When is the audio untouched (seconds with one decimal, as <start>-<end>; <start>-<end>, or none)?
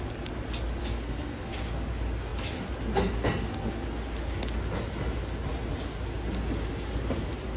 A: 0.0-0.8; 1.5-7.6